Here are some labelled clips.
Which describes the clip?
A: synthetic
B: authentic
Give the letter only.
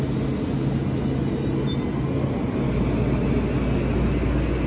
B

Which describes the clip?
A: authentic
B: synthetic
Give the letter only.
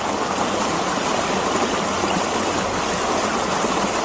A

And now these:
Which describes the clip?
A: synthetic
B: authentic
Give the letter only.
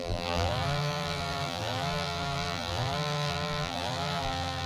A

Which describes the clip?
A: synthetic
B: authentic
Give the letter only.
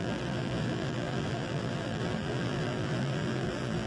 A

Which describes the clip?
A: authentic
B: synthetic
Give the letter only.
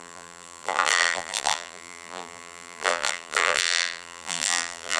B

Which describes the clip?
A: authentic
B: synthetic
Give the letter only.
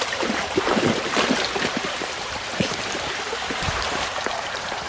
B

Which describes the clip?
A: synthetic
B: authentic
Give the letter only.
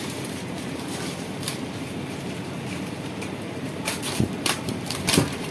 A